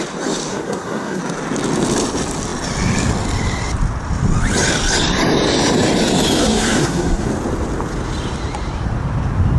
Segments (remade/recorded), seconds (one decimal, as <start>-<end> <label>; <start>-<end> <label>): 0.0-0.5 recorded; 0.5-1.2 remade; 1.2-6.4 recorded; 6.4-7.3 remade; 7.3-9.6 recorded